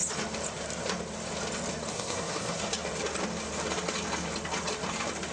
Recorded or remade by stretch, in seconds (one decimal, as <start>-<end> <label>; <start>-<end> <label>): 0.0-1.9 recorded; 1.9-2.7 remade; 2.7-5.3 recorded